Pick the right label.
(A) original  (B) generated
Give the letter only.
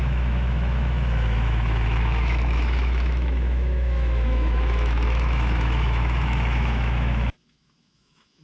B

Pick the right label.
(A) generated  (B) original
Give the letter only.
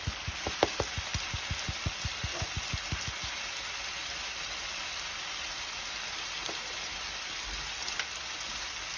B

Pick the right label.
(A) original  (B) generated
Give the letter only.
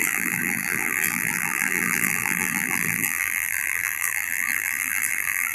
B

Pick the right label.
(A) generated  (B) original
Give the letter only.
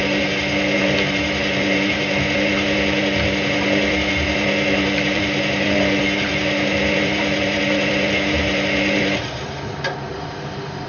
A